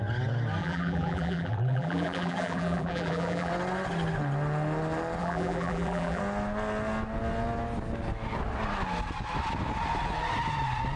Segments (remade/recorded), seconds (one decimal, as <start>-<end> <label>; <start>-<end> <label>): 0.0-0.6 recorded; 0.6-3.5 remade; 3.5-5.2 recorded; 5.2-6.2 remade; 6.2-11.0 recorded